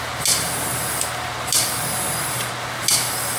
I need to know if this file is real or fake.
real